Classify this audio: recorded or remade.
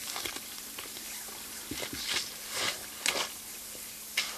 recorded